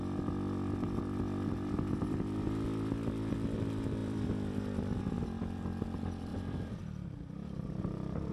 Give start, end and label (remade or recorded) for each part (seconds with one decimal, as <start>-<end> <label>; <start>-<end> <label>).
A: 0.0-4.0 recorded; 4.0-5.2 remade; 5.2-6.3 recorded; 6.3-8.3 remade